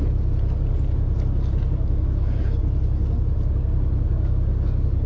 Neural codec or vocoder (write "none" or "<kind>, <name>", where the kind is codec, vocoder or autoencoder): none